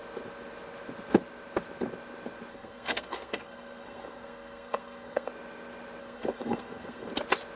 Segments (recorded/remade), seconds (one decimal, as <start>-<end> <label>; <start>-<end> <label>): 0.0-2.5 recorded; 2.5-5.3 remade; 5.3-6.0 recorded; 6.0-7.1 remade; 7.1-7.6 recorded